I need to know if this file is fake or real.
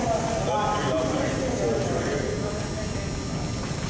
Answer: real